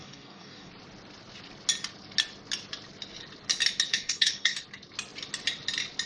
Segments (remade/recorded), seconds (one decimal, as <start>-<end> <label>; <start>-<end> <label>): 0.0-0.7 remade; 0.7-3.9 recorded; 3.9-4.6 remade; 4.6-6.1 recorded